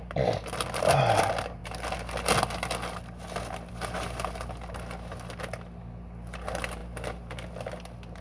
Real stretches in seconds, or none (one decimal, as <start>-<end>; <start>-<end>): 0.0-8.2